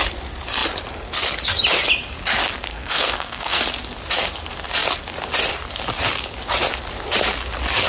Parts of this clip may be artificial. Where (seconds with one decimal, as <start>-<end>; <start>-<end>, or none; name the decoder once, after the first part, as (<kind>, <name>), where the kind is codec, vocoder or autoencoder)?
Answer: 2.7-3.6 (codec, SNAC)